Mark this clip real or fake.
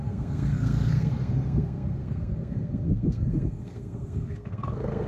fake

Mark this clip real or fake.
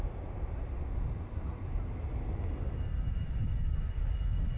real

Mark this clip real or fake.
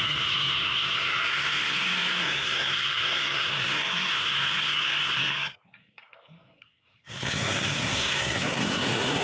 fake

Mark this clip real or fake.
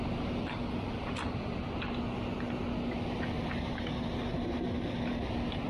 real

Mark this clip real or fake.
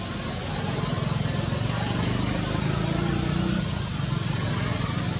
real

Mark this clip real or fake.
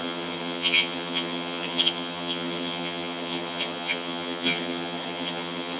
fake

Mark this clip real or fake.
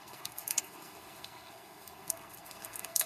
fake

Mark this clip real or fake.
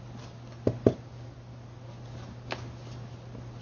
real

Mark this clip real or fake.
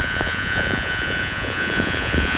fake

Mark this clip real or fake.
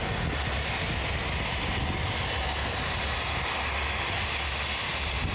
real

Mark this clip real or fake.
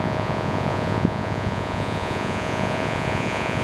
fake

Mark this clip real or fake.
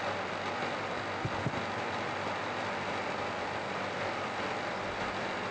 real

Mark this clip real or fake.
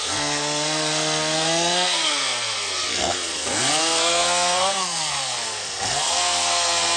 fake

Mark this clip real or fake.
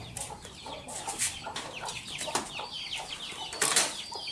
real